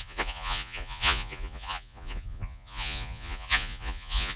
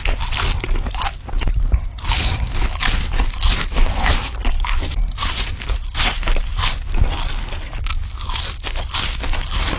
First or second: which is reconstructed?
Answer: first